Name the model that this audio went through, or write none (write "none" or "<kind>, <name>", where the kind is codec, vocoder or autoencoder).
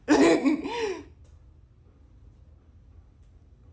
none